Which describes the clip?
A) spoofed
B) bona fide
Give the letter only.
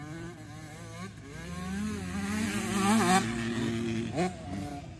B